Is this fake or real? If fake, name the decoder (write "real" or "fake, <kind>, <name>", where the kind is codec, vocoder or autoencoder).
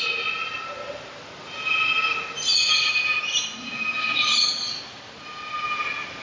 real